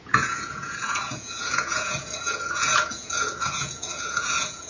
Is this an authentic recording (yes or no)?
no